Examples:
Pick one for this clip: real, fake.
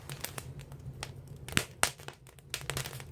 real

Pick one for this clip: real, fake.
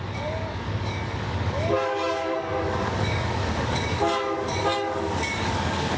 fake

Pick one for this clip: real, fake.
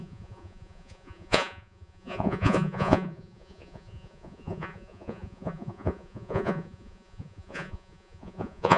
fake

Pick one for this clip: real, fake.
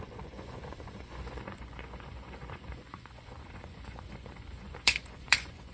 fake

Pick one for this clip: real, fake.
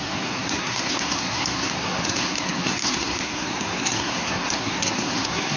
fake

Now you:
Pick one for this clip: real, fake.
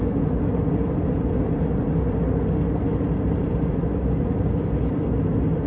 real